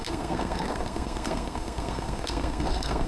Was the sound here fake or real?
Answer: fake